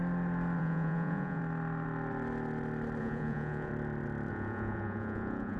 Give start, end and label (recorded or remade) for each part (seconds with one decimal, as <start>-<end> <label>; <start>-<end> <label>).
0.0-0.6 recorded; 0.6-1.4 remade; 1.4-3.0 recorded; 3.0-3.7 remade; 3.7-4.3 recorded; 4.3-5.6 remade